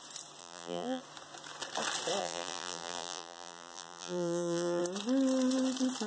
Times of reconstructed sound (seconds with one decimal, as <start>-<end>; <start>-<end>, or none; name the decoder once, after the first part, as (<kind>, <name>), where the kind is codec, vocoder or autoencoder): 0.4-1.0 (vocoder, BigVGAN v2); 2.2-4.8